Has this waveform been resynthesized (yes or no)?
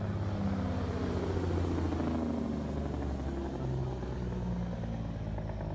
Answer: no